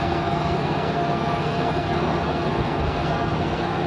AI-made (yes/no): yes